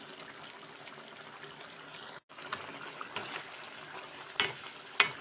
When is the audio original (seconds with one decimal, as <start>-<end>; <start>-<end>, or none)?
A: 0.0-5.2